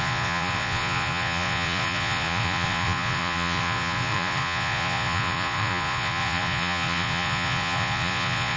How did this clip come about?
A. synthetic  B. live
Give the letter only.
A